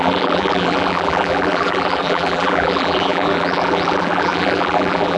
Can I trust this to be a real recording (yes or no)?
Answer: no